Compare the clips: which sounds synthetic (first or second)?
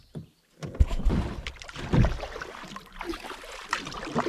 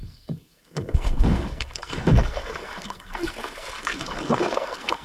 second